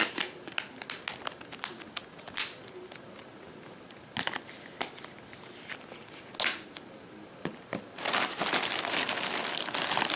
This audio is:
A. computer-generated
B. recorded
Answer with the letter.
B